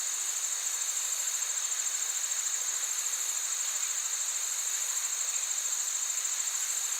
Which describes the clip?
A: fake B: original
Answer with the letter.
B